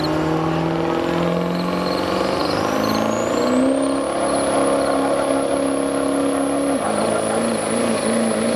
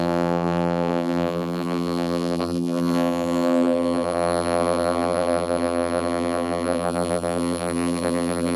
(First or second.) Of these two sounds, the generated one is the second